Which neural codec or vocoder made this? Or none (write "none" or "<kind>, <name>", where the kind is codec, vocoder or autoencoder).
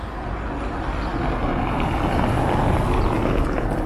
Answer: none